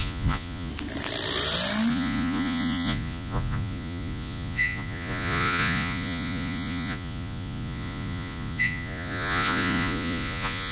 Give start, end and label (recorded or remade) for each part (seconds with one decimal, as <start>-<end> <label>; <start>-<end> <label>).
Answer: 0.0-0.7 remade; 0.7-1.9 recorded; 1.9-10.7 remade